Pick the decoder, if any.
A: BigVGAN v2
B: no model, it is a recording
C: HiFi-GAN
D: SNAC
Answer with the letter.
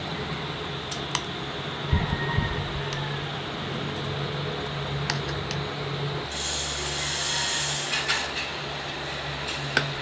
B